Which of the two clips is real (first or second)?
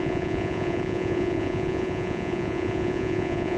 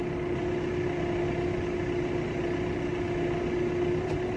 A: second